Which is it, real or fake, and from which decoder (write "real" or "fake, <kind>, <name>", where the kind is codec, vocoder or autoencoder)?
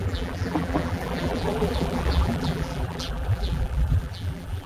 fake, vocoder, BigVGAN v2